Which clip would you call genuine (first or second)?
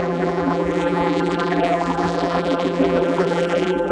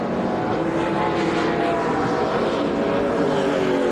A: second